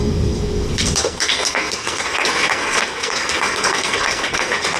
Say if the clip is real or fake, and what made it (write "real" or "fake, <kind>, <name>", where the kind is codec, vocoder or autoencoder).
fake, codec, SNAC